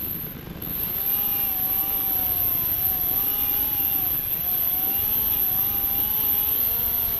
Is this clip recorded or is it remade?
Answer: recorded